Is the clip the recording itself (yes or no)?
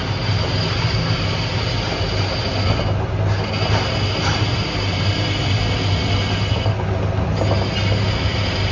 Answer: yes